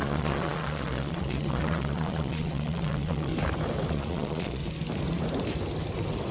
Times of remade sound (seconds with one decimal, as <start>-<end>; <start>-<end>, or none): 0.0-3.3; 3.9-4.6